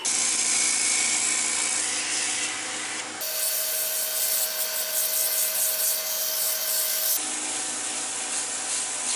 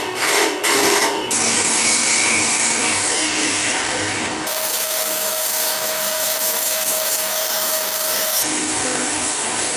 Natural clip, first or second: first